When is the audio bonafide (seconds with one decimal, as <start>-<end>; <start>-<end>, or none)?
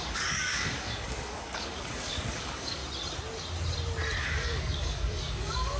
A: 2.8-4.2